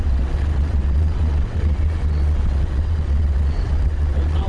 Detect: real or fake fake